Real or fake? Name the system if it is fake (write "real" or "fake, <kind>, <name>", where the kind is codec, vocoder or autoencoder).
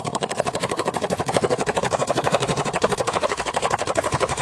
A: fake, codec, SNAC